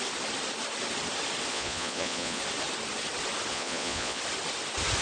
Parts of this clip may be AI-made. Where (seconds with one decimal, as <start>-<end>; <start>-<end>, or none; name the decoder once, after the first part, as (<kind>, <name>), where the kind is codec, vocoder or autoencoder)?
1.5-2.4 (vocoder, Vocos); 3.5-4.2